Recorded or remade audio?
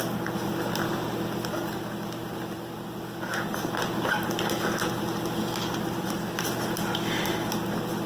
recorded